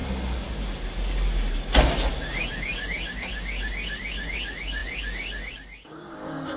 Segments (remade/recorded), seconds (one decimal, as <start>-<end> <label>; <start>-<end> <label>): 0.0-2.1 recorded; 2.1-6.6 remade